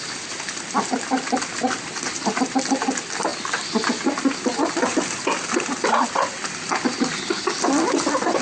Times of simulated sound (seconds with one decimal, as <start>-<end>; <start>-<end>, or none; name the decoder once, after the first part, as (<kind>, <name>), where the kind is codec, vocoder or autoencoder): none

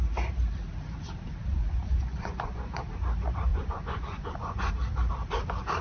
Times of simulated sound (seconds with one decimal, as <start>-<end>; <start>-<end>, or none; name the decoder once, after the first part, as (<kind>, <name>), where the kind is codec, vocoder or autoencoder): 1.5-2.8 (vocoder, Vocos); 3.5-4.7

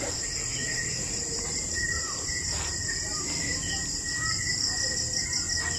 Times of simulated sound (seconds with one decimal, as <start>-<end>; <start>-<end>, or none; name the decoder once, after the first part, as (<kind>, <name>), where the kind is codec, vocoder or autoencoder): 0.6-3.1 (vocoder, BigVGAN v2)

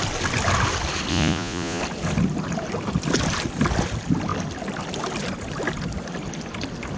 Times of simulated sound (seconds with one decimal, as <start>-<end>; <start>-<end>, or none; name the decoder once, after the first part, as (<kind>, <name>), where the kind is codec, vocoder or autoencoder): 1.1-1.8 (vocoder, Vocos)

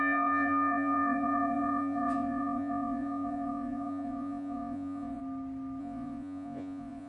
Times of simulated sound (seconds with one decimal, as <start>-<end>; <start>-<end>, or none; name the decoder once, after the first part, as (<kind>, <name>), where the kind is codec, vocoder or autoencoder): 0.0-5.2 (vocoder, Vocos); 5.8-7.1